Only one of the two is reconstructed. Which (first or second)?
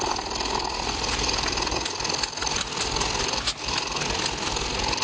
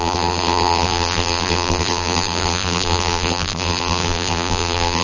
second